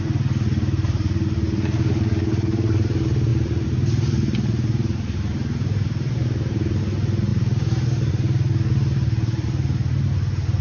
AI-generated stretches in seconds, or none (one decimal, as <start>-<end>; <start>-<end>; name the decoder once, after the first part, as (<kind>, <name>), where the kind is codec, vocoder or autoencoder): 3.3-6.8 (vocoder, BigVGAN v2); 7.3-8.1